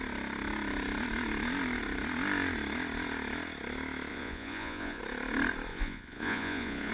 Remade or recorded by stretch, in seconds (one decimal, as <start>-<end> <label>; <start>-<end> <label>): 0.0-4.1 recorded; 4.1-5.0 remade; 5.0-5.7 recorded; 5.7-6.9 remade